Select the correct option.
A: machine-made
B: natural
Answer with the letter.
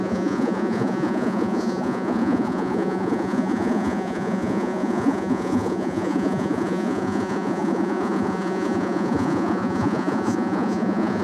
A